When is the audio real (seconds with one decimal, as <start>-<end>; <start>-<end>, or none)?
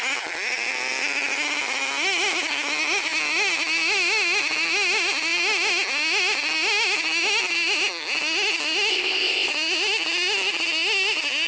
0.0-8.9; 9.5-11.5